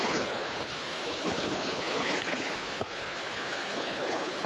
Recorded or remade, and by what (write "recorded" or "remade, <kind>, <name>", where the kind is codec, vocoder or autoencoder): remade, codec, HILCodec